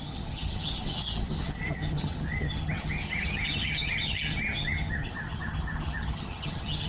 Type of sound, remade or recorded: remade